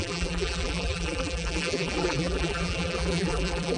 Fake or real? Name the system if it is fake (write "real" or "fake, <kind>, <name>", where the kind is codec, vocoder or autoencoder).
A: fake, vocoder, BigVGAN v2